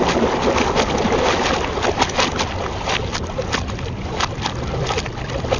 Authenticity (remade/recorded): recorded